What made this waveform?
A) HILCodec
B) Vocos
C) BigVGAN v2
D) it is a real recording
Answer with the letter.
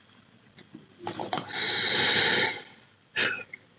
D